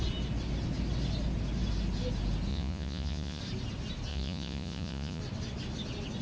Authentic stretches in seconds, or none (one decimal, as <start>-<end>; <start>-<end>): 0.0-2.5; 3.4-4.1; 5.2-6.2